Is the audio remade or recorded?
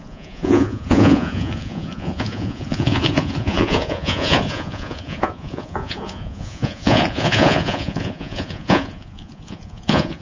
remade